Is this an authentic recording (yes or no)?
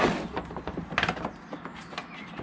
yes